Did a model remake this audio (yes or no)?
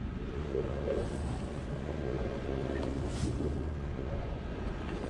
yes